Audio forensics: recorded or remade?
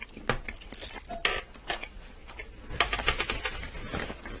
recorded